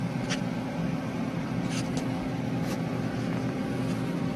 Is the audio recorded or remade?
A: recorded